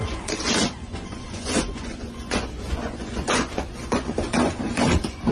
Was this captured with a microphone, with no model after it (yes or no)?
no